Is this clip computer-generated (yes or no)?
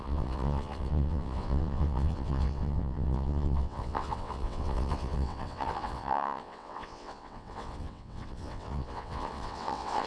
yes